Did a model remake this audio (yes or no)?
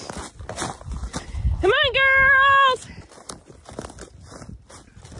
no